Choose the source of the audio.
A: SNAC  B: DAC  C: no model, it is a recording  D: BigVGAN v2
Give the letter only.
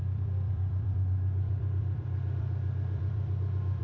D